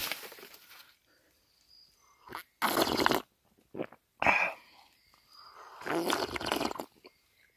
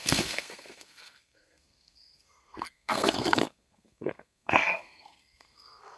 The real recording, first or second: first